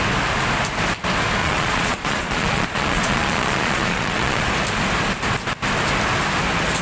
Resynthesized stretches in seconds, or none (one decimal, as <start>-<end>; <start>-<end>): 1.4-4.5

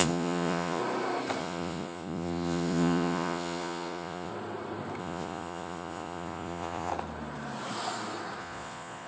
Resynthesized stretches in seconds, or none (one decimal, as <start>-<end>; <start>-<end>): 0.0-0.8; 1.4-4.3; 5.0-6.9; 8.4-9.1

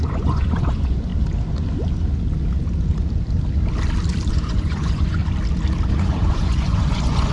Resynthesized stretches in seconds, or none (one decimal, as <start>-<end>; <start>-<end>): 0.0-1.1; 4.3-5.2; 5.9-7.3

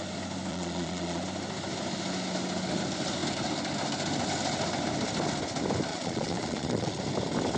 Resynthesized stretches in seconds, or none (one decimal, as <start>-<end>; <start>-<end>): 0.5-1.2; 5.9-7.0

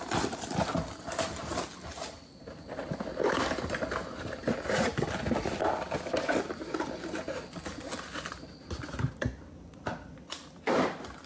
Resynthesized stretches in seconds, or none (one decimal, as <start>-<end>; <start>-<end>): none

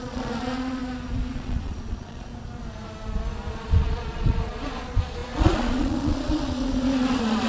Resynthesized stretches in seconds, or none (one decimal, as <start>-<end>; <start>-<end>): 0.0-0.8; 1.3-2.3; 3.5-7.5

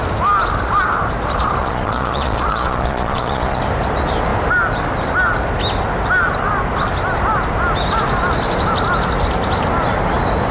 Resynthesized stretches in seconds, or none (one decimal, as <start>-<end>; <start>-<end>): 1.6-3.6